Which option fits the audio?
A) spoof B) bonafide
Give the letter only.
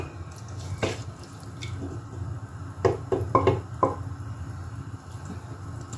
B